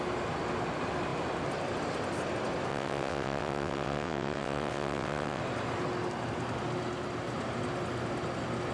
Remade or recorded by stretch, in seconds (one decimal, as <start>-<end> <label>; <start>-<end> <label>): 0.0-2.7 recorded; 2.7-5.4 remade; 5.4-8.7 recorded